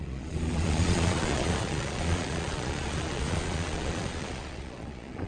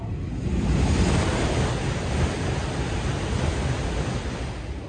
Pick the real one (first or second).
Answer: second